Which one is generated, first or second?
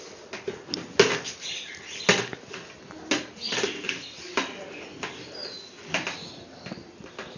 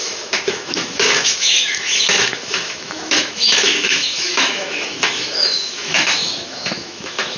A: second